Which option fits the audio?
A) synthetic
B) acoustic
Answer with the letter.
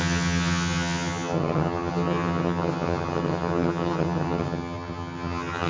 A